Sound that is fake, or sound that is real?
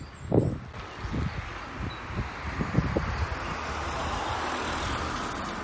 real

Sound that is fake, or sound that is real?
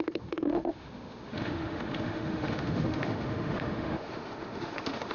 fake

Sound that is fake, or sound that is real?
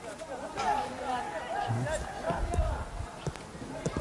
real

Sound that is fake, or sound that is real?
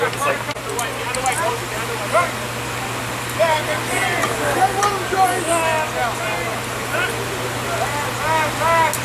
real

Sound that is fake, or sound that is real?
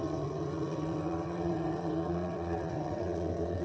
fake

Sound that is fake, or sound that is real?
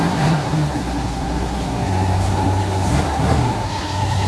fake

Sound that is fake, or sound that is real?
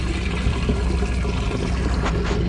real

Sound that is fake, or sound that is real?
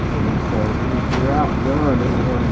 real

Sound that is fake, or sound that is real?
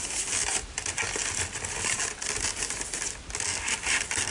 real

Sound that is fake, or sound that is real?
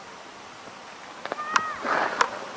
real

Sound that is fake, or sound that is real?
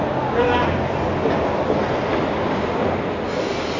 real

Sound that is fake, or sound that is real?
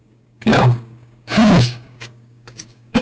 fake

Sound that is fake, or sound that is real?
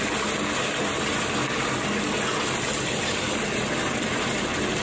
real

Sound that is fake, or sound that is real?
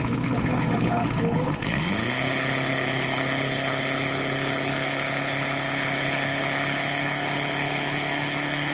fake